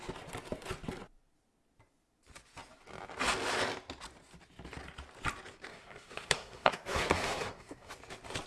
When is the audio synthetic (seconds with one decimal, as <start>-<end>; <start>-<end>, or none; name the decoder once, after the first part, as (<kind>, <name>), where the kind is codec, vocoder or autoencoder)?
5.7-7.9 (codec, SNAC)